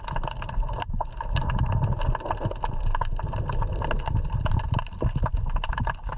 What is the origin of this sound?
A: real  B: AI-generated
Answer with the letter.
A